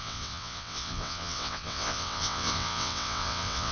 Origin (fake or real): fake